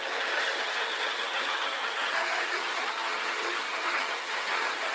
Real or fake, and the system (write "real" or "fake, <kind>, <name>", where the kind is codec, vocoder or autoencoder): fake, vocoder, HiFi-GAN